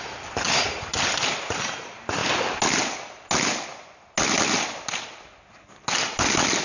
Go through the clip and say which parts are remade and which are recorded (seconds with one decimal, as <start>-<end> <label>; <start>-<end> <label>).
0.0-6.6 recorded